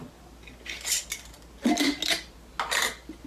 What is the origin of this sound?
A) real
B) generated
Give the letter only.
A